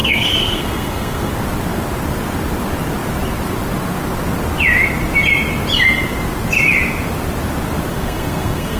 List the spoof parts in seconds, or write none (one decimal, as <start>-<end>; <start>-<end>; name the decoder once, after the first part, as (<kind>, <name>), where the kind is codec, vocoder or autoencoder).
0.0-1.3 (codec, SNAC); 7.9-8.8